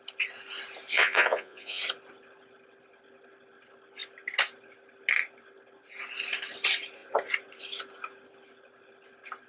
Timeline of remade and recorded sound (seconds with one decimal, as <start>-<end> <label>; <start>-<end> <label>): 0.0-0.9 recorded; 0.9-1.8 remade; 1.8-9.5 recorded